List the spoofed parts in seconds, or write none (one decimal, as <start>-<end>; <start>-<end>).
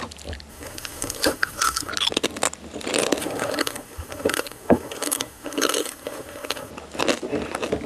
0.5-1.9; 3.2-6.7